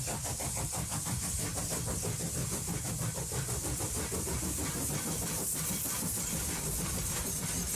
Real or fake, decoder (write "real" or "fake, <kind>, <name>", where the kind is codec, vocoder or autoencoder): real